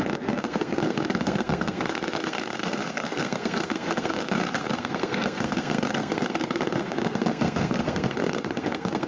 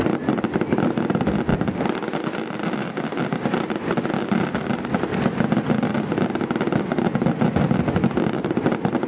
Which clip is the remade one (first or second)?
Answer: first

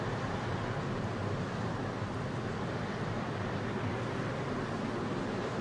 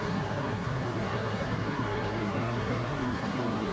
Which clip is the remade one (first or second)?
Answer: second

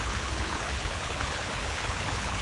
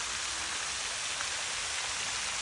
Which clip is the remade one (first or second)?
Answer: first